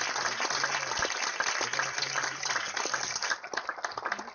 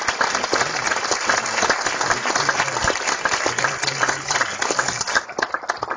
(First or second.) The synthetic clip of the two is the second